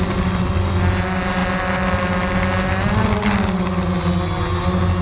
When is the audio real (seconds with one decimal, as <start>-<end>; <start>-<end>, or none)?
0.0-5.0